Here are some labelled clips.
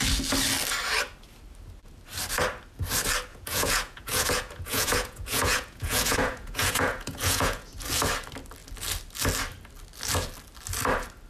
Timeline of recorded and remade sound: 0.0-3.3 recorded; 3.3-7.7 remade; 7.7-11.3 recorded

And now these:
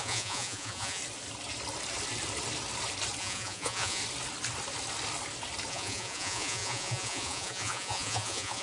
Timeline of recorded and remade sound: 0.0-1.0 remade; 1.0-3.2 recorded; 3.2-4.0 remade; 4.0-5.7 recorded; 5.7-8.6 remade

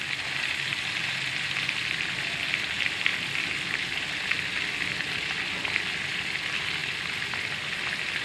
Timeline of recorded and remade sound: 0.0-8.2 recorded

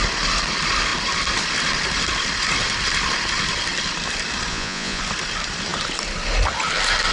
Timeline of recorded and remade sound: 0.0-4.5 recorded; 4.5-5.0 remade; 5.0-7.1 recorded